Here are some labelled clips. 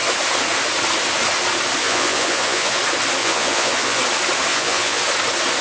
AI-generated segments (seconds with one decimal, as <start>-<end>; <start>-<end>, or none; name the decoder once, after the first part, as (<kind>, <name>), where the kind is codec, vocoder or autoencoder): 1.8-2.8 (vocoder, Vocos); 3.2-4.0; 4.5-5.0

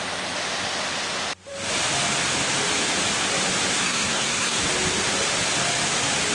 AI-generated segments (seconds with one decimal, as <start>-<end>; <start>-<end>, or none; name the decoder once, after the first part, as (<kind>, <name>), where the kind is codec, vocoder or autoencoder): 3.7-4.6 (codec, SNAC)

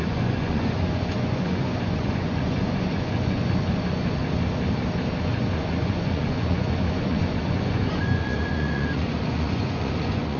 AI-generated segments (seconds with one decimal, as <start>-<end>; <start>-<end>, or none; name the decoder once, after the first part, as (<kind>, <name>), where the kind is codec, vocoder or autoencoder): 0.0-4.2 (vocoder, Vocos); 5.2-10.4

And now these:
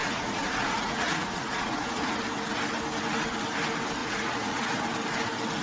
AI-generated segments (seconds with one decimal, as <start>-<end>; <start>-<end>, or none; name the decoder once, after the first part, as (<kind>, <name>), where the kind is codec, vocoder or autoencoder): 0.0-2.1 (vocoder, Vocos); 4.0-4.8